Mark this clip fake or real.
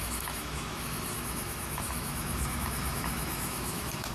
fake